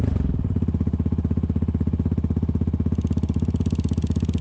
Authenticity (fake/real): real